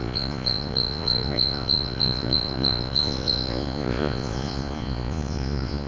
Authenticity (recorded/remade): remade